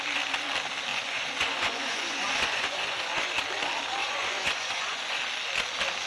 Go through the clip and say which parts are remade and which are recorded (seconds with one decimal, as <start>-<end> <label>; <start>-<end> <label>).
0.0-0.9 recorded; 0.9-3.3 remade; 3.3-4.0 recorded; 4.0-5.2 remade; 5.2-6.1 recorded